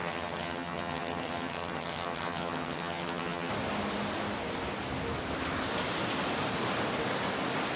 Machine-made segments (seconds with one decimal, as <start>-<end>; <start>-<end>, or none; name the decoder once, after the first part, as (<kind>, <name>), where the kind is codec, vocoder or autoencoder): 0.0-3.5 (vocoder, HiFi-GAN)